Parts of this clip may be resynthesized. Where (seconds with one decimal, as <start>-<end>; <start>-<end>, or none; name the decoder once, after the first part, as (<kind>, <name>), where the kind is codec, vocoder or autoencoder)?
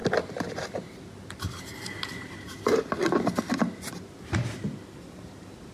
0.0-3.4 (vocoder, BigVGAN v2)